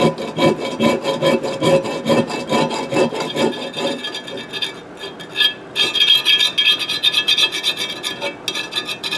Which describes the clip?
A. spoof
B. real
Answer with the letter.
B